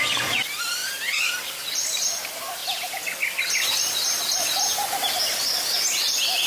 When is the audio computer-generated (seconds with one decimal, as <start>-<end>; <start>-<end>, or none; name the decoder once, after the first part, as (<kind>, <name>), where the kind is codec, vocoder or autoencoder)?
none